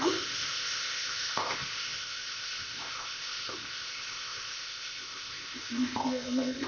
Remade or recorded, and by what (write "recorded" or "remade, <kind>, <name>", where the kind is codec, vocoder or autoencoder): remade, codec, ZipCodec